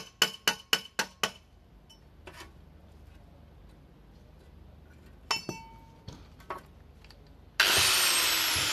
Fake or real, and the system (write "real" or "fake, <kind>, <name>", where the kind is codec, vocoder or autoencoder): real